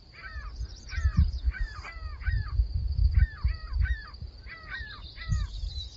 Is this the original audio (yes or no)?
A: no